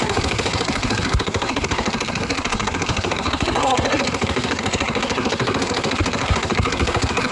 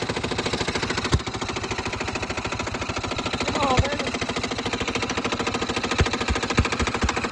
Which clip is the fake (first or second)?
first